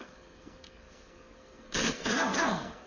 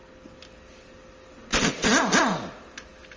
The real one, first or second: second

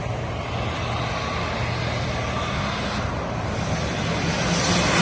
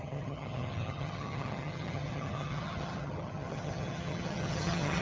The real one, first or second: first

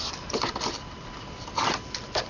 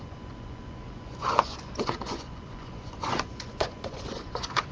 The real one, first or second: first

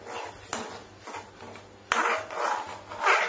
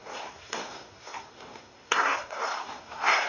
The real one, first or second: first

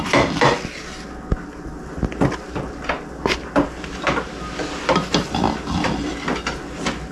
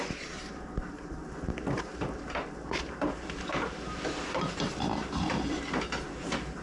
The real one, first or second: first